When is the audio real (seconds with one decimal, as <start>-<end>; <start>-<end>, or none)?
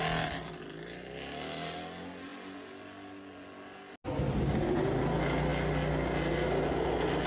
0.0-7.3